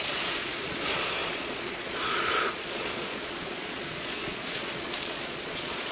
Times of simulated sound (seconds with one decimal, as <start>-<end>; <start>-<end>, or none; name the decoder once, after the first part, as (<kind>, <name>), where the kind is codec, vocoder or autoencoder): 0.0-5.9 (vocoder, Vocos)